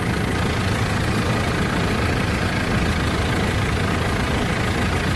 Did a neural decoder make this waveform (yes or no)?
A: no